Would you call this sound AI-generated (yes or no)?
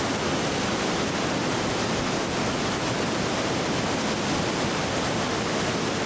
no